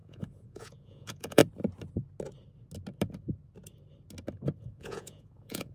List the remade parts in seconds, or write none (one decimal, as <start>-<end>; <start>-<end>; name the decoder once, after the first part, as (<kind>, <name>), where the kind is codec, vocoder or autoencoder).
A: 0.0-1.4 (vocoder, Vocos); 4.6-5.7